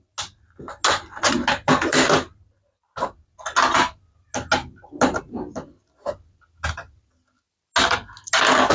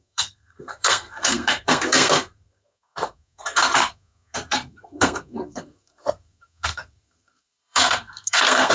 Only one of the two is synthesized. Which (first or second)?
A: second